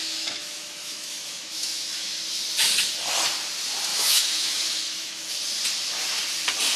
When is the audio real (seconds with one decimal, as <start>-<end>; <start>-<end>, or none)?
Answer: 2.2-3.9; 5.3-6.8